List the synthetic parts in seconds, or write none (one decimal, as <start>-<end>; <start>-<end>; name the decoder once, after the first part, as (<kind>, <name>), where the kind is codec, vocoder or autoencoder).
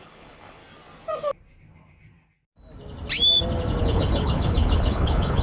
0.0-0.6 (codec, HILCodec); 3.8-5.4